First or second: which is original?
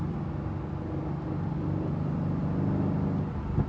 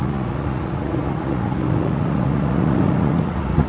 first